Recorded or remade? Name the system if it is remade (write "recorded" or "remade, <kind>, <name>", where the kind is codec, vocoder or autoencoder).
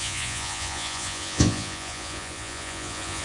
remade, vocoder, Vocos